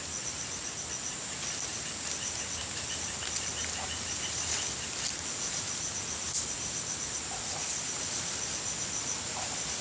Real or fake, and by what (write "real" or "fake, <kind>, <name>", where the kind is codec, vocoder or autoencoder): real